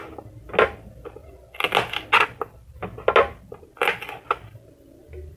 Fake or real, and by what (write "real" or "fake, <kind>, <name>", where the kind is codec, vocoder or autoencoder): real